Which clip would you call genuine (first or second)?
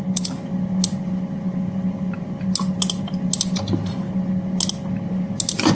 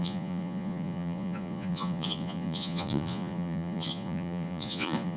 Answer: first